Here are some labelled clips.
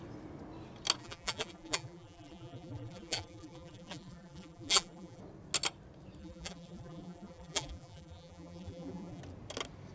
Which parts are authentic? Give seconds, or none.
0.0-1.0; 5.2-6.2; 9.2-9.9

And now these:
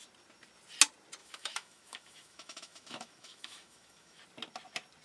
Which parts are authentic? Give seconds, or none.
0.0-1.2; 4.2-5.0

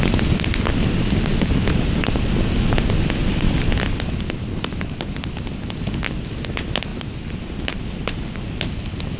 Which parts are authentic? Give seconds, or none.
0.0-9.2

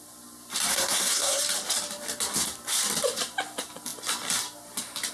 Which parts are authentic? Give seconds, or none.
0.0-0.7; 1.4-5.1

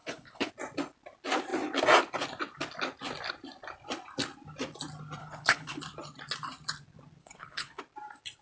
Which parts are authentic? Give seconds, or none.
0.5-5.2; 5.8-7.2; 7.8-8.4

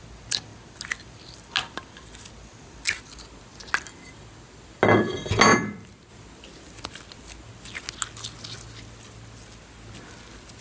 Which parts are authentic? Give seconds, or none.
0.0-10.6